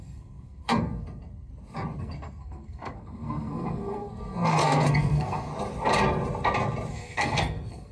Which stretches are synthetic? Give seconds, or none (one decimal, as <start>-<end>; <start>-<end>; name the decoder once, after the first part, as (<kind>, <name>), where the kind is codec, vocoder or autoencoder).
0.0-1.5 (codec, SNAC); 2.0-5.5; 6.9-7.9